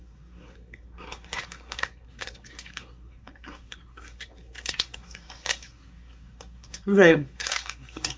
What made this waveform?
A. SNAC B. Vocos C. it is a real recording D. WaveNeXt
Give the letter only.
A